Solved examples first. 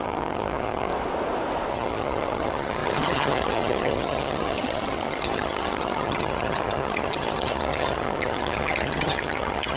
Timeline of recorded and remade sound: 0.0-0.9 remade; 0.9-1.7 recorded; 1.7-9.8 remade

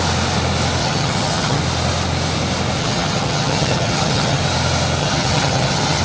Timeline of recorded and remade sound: 0.0-0.8 recorded; 0.8-1.6 remade; 1.6-2.8 recorded; 2.8-4.4 remade; 4.4-5.0 recorded; 5.0-6.0 remade

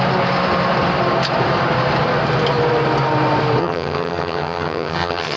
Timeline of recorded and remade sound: 0.0-3.6 recorded; 3.6-5.4 remade

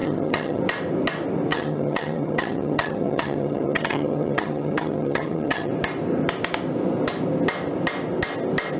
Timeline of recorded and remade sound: 0.0-0.6 remade; 0.6-1.5 recorded; 1.5-5.7 remade; 5.7-8.8 recorded

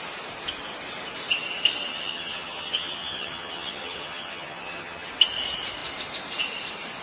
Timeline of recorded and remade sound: 0.0-1.9 recorded; 1.9-5.1 remade; 5.1-7.0 recorded